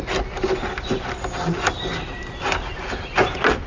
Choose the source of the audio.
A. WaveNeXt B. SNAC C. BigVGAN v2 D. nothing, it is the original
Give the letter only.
D